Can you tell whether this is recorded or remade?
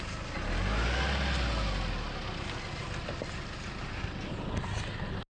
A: recorded